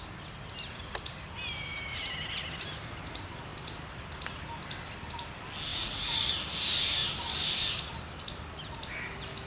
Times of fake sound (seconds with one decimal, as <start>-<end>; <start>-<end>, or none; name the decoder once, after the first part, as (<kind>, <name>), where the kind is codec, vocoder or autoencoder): 5.7-6.3 (vocoder, Vocos)